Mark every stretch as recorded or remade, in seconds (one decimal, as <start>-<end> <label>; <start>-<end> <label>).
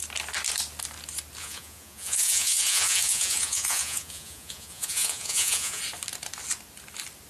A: 0.0-1.4 recorded; 1.4-5.8 remade; 5.8-7.3 recorded